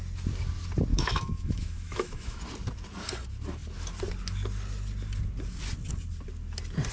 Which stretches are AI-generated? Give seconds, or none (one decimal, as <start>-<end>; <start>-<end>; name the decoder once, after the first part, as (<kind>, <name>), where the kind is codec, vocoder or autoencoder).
0.9-2.4 (autoencoder, DAC-VAE)